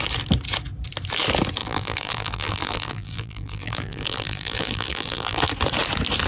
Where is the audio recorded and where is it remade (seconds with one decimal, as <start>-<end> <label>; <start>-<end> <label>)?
0.0-1.6 recorded; 1.6-5.4 remade; 5.4-6.3 recorded